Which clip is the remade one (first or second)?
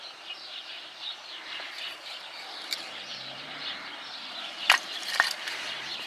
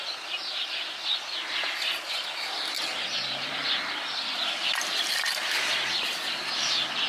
first